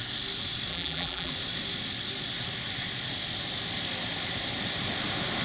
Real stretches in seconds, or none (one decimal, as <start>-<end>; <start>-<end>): 0.0-0.7; 1.3-5.4